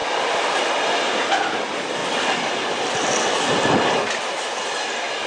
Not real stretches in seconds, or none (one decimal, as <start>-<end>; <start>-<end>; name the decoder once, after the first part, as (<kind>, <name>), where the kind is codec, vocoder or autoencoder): none